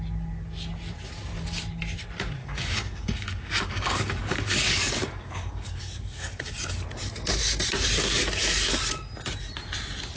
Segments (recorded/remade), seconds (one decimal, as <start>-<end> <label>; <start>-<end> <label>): 0.0-2.4 recorded; 2.4-6.5 remade; 6.5-10.2 recorded